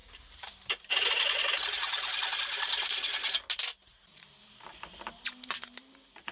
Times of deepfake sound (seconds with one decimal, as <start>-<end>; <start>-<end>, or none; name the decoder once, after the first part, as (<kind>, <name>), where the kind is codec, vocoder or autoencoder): 0.0-1.1 (vocoder, BigVGAN v2); 3.9-5.1